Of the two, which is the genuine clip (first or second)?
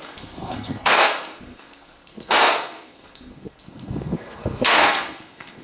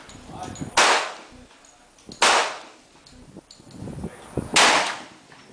second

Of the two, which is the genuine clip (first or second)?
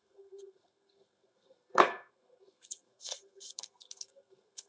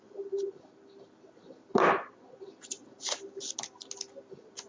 second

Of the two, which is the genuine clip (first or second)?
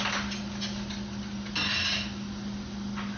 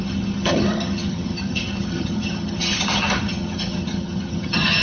first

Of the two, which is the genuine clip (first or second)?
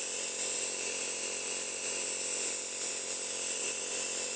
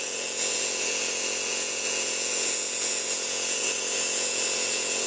first